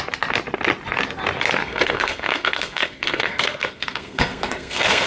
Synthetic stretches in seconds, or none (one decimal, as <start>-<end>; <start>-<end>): 1.6-5.1